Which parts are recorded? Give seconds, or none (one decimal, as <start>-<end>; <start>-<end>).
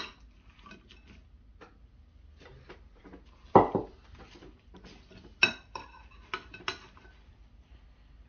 0.0-8.3